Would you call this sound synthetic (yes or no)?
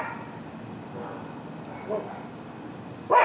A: no